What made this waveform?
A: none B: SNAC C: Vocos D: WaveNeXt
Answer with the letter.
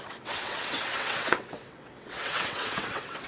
D